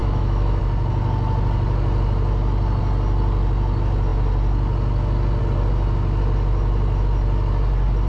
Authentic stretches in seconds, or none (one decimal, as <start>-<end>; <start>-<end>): 0.6-8.1